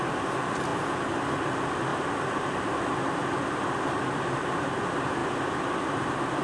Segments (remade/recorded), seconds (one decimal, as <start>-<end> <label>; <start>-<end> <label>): 0.0-6.4 recorded